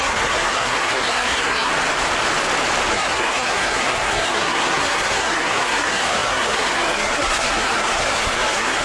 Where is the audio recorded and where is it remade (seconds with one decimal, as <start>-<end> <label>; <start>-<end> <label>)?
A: 0.0-1.7 remade; 1.7-2.9 recorded; 2.9-8.8 remade